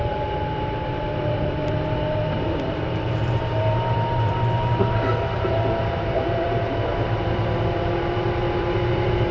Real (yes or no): no